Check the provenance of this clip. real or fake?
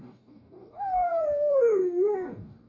fake